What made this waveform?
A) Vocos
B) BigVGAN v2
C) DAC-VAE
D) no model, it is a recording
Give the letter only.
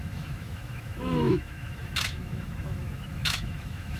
C